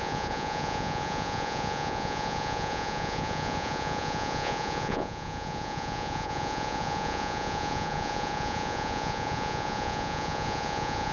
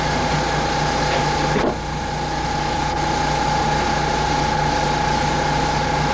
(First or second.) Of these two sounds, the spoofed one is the first